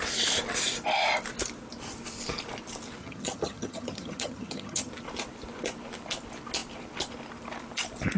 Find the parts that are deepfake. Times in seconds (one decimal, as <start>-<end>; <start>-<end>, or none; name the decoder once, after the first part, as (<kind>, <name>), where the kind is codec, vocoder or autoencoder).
3.0-4.9 (vocoder, HiFi-GAN)